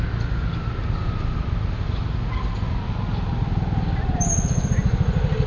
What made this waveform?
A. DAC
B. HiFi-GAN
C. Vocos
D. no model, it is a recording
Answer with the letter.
D